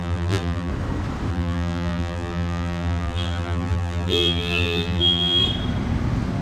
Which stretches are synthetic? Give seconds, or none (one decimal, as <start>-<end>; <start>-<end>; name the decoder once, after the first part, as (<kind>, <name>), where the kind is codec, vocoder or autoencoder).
0.0-0.7 (vocoder, BigVGAN v2); 1.3-5.4